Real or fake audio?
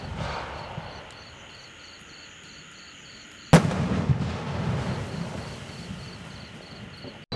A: real